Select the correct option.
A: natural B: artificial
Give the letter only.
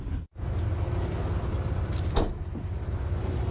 A